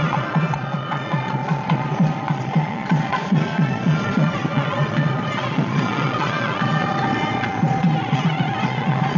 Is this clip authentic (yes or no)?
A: no